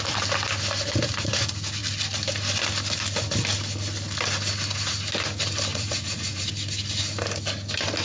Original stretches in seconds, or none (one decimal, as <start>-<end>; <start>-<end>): 0.0-5.7; 6.5-8.0